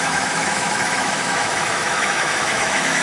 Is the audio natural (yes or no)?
no